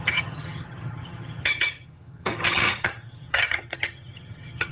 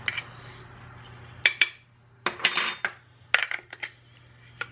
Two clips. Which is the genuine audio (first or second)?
second